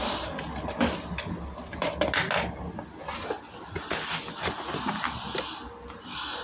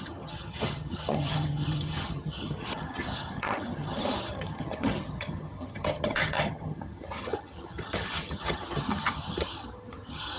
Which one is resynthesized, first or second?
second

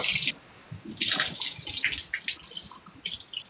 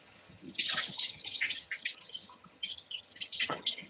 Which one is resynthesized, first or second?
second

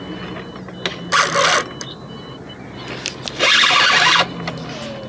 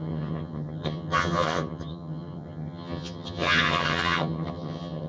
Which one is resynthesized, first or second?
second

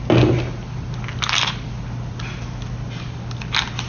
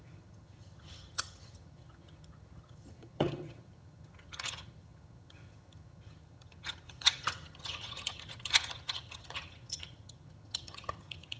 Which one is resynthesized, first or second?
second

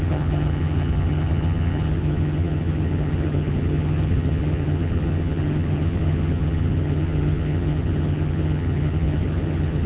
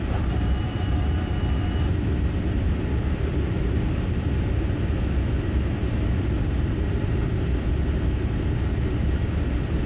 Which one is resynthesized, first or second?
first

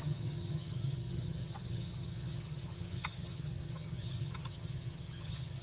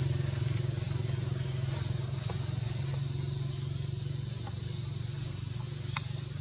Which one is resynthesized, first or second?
first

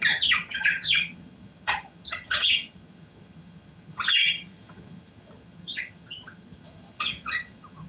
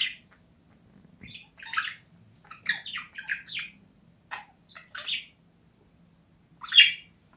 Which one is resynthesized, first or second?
first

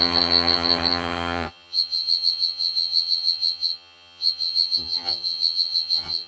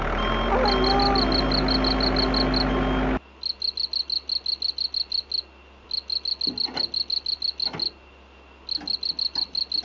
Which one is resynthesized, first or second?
first